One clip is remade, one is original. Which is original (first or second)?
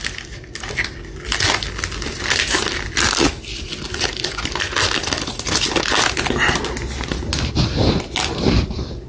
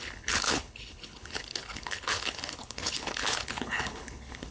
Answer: first